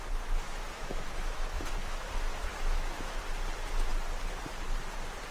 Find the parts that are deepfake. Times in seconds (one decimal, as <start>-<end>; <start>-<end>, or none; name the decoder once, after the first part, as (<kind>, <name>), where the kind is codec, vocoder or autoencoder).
0.0-2.1 (autoencoder, DAC-VAE); 2.5-3.2